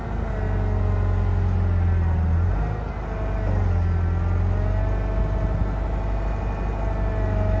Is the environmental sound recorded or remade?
recorded